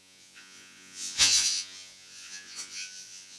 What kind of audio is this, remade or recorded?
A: remade